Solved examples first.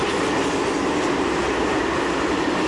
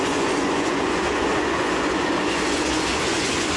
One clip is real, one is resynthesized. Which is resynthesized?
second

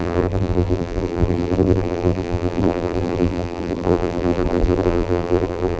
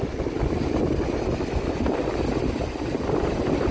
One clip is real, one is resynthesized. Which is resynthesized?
first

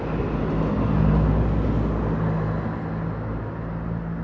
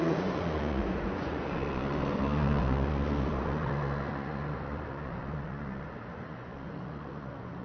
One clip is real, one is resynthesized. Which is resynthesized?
second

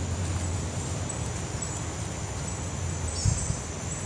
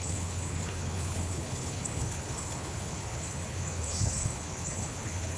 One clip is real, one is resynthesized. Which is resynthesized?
second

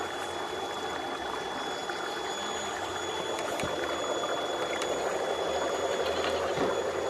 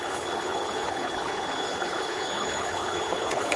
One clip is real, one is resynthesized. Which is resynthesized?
second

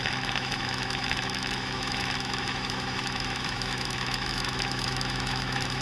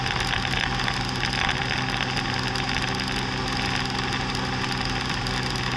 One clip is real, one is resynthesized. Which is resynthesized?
first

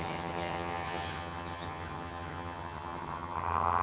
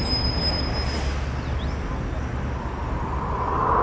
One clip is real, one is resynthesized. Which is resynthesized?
first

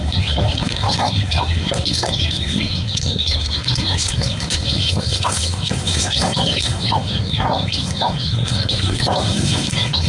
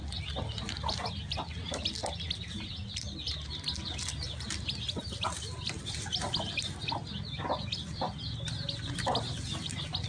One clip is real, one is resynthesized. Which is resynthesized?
first